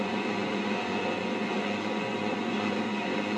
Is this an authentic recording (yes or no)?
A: no